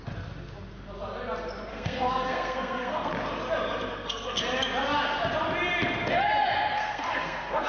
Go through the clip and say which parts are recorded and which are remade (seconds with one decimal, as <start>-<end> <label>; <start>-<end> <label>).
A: 0.0-1.7 recorded; 1.7-3.1 remade; 3.1-3.9 recorded; 3.9-4.4 remade; 4.4-6.7 recorded; 6.7-7.7 remade